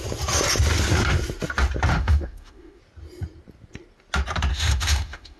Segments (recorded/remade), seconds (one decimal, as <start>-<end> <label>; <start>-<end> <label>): 0.0-1.9 recorded; 1.9-2.8 remade; 2.8-4.5 recorded; 4.5-5.4 remade